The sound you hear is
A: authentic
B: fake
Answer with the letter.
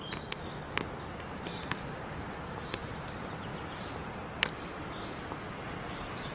A